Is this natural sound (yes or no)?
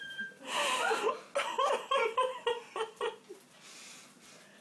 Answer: yes